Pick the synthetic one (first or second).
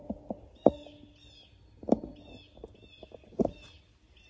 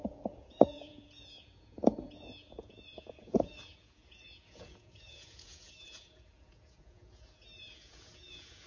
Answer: second